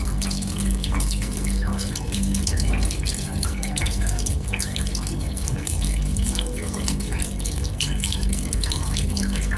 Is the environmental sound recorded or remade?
remade